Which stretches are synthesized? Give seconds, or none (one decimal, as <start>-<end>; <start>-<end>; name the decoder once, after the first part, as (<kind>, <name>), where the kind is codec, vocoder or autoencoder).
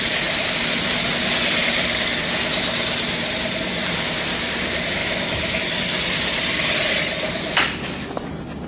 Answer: 5.0-5.6 (autoencoder, DAC-VAE)